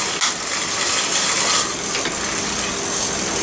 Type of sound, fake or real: real